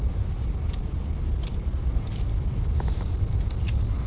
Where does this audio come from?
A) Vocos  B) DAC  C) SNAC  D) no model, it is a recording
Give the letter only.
D